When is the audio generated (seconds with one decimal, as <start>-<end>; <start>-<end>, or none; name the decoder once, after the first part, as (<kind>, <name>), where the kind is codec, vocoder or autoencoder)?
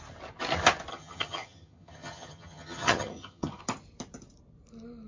0.9-3.6 (vocoder, HiFi-GAN)